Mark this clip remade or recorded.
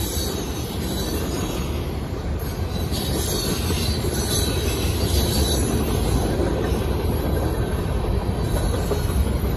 recorded